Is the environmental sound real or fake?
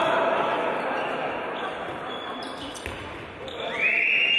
fake